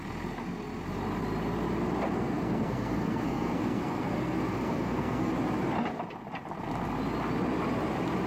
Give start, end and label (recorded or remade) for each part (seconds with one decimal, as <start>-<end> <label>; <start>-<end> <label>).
0.0-2.1 recorded; 2.1-5.3 remade; 5.3-8.3 recorded